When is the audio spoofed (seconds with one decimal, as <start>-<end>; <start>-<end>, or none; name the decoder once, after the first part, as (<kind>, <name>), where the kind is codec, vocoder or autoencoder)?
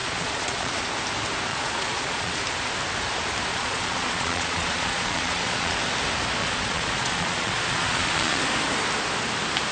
0.0-0.9 (vocoder, Vocos); 1.5-2.4; 3.5-5.8; 6.4-8.4